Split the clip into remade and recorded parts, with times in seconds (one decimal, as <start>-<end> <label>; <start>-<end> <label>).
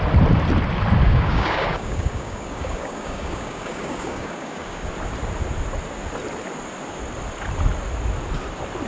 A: 0.0-1.0 recorded; 1.0-4.9 remade; 4.9-8.9 recorded